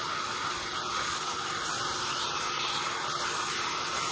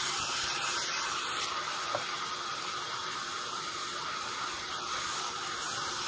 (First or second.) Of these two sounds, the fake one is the second